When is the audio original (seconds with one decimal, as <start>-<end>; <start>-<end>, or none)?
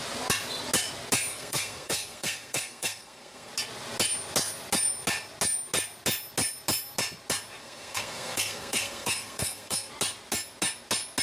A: 0.0-1.3; 3.5-7.6; 9.9-11.2